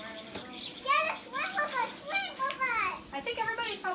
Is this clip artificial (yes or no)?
no